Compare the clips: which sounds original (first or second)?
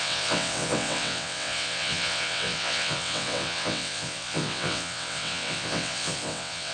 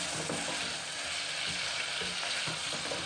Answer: second